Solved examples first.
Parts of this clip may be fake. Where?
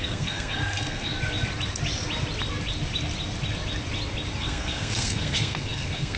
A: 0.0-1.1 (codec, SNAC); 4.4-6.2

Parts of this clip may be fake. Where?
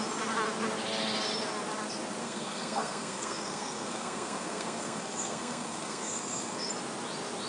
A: 2.2-6.7 (codec, SNAC)